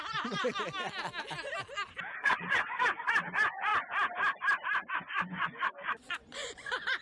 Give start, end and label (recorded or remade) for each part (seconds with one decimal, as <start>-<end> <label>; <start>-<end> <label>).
0.0-0.5 remade; 0.5-2.1 recorded; 2.1-3.7 remade; 3.7-4.9 recorded; 4.9-7.0 remade